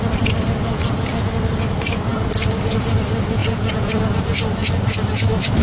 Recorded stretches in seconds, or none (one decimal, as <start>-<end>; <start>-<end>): 0.0-3.4; 4.0-5.6